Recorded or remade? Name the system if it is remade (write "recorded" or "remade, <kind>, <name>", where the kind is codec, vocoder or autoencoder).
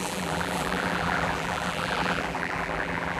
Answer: remade, vocoder, BigVGAN v2